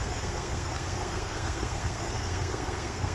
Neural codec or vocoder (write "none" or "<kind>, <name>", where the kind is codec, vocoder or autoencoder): codec, SNAC